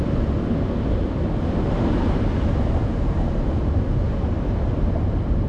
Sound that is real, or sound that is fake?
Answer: real